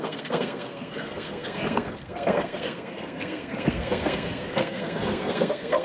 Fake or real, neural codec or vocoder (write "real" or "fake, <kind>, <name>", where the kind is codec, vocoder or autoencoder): fake, codec, SNAC